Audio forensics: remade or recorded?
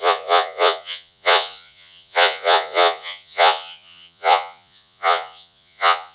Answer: remade